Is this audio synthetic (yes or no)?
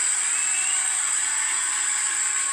no